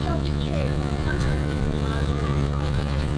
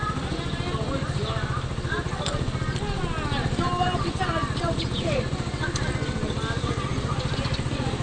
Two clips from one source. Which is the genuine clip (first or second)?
second